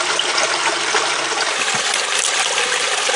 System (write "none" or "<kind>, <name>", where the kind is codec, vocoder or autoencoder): vocoder, BigVGAN v2